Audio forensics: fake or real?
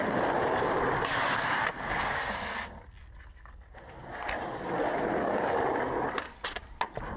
real